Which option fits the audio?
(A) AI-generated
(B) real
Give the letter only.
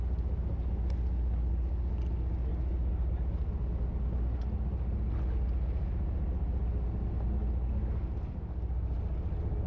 B